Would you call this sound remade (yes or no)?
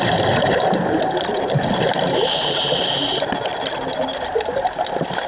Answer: no